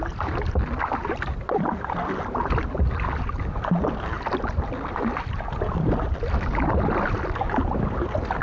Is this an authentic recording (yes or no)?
yes